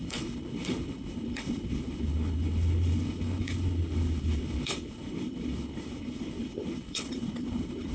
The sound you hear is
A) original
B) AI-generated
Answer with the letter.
B